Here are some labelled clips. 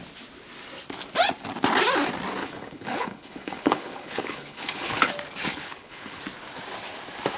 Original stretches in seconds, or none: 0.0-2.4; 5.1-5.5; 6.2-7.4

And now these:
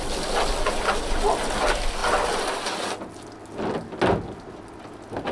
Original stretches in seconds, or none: 0.0-5.3

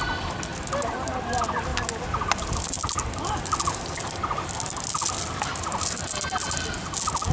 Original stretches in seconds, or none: 0.0-7.3

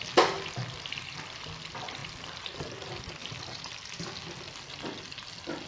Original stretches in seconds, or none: 0.0-5.7

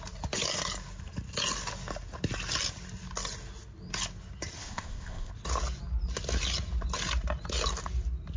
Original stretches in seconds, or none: 0.0-4.6; 5.3-8.4

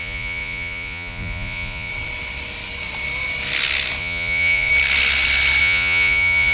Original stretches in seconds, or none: 1.9-4.0; 4.7-5.6

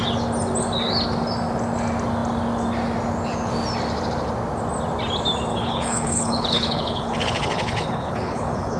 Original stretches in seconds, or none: 0.0-5.5

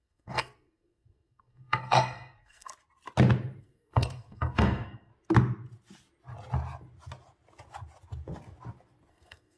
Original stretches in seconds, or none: 2.7-3.6; 5.1-9.1